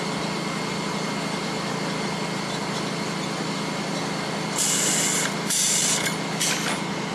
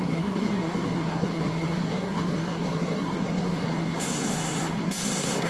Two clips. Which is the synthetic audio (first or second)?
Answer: second